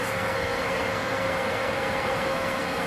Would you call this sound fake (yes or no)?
yes